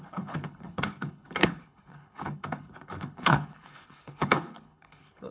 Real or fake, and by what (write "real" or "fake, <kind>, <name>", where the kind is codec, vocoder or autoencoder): fake, codec, HILCodec